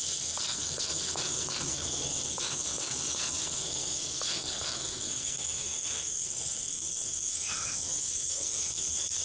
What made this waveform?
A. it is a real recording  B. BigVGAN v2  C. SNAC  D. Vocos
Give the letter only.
C